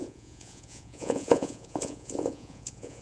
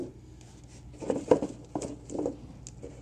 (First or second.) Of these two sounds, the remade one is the first